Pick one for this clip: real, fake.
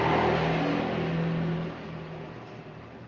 real